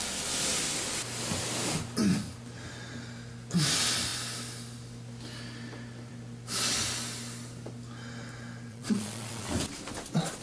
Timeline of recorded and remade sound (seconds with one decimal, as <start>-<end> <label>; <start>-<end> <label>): 0.0-8.7 recorded; 8.7-9.5 remade; 9.5-10.4 recorded

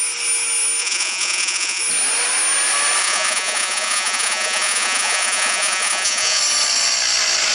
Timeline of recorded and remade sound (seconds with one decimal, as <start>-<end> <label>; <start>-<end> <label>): 0.0-0.8 recorded; 0.8-1.8 remade; 1.8-3.0 recorded; 3.0-6.4 remade; 6.4-7.5 recorded